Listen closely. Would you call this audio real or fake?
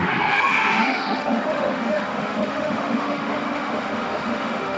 fake